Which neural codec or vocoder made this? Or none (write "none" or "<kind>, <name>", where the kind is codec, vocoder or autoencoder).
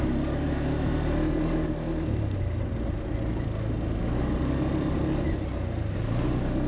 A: none